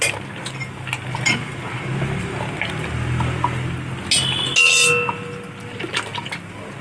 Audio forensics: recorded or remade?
recorded